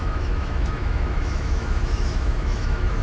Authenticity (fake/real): fake